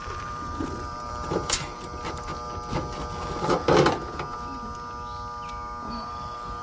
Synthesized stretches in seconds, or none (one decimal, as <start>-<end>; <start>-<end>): 0.0-2.3; 6.1-6.6